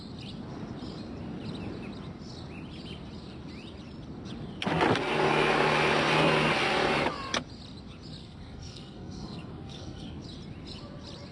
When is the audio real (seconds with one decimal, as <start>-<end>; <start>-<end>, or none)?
0.0-8.2; 10.2-11.3